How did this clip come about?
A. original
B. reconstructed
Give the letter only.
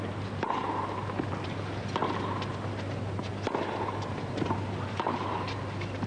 A